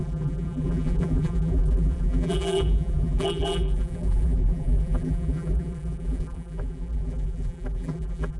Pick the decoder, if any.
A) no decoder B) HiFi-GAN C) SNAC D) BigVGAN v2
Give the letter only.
D